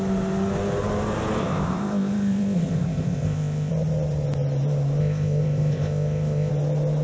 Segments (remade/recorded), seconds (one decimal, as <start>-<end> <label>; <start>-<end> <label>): 0.0-1.4 recorded; 1.4-3.7 remade; 3.7-5.0 recorded; 5.0-6.5 remade; 6.5-7.0 recorded